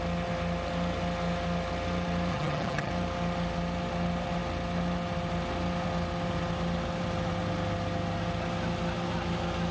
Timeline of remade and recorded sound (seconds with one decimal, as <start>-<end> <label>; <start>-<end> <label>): 0.0-2.3 recorded; 2.3-2.9 remade; 2.9-9.7 recorded